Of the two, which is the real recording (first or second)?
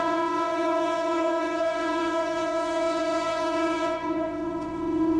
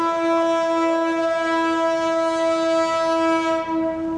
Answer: second